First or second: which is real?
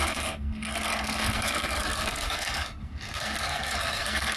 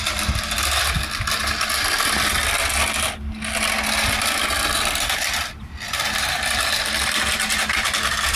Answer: second